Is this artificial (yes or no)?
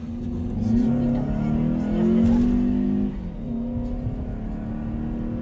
no